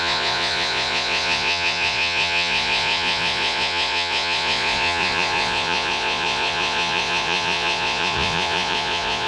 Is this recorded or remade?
remade